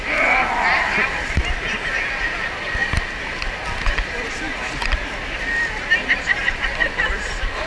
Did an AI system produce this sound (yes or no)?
no